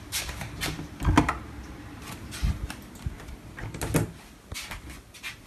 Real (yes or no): yes